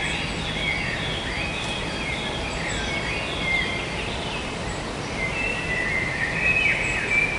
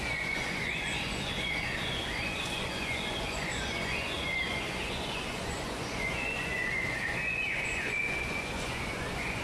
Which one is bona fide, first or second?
first